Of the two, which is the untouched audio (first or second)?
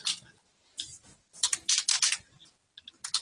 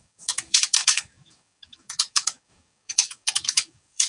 first